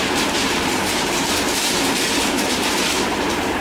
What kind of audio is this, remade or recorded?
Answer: remade